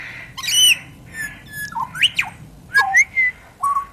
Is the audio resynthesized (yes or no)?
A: no